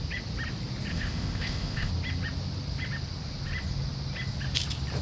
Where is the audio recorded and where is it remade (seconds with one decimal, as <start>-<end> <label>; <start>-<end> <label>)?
0.0-0.9 recorded; 0.9-1.9 remade; 1.9-5.0 recorded